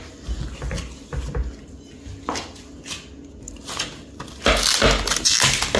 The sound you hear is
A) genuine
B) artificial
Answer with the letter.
A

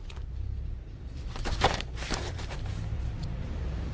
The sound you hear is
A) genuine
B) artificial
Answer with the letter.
B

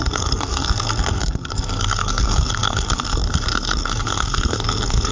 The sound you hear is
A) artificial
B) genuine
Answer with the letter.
A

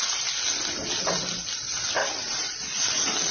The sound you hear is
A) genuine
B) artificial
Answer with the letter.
A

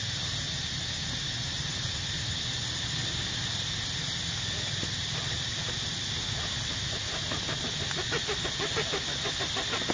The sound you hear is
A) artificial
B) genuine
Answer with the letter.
B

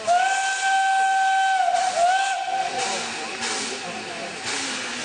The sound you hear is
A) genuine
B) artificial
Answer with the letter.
A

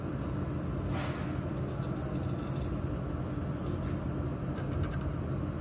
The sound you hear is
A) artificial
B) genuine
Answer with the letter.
B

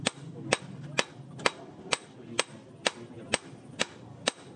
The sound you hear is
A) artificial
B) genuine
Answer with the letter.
B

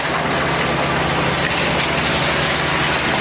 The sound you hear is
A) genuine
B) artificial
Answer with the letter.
A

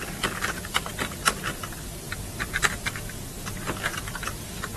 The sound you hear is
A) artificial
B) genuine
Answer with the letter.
B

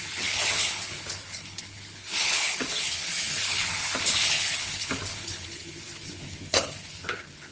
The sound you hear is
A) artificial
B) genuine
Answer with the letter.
A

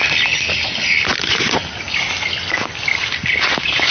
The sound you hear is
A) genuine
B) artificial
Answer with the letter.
A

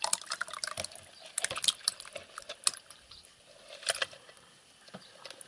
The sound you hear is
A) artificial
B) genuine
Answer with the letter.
B